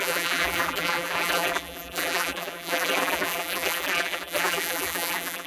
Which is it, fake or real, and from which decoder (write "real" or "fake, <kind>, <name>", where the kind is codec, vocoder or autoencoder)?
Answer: fake, vocoder, BigVGAN v2